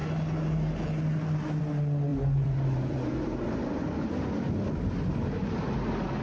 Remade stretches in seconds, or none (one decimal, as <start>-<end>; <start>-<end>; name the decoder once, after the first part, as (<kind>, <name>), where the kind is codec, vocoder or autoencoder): 2.1-4.5 (vocoder, BigVGAN v2)